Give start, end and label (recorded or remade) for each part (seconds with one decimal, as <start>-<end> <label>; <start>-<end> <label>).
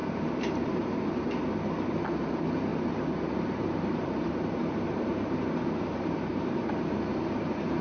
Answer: 0.0-1.3 remade; 1.3-2.7 recorded; 2.7-7.8 remade